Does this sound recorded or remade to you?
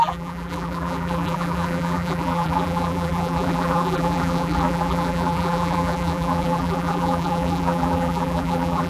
remade